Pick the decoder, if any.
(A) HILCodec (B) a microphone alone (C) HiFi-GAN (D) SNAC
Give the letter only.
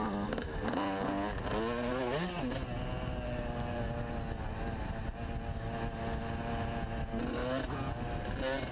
B